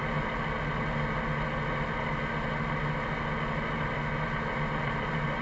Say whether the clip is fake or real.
real